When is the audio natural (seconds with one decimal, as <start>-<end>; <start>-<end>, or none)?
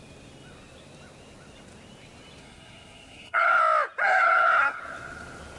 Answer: 0.0-2.4; 3.6-4.0; 4.8-5.6